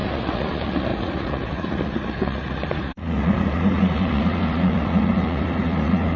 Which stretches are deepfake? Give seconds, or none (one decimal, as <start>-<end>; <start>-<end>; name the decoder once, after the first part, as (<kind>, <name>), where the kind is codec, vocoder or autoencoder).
0.0-6.2 (vocoder, Vocos)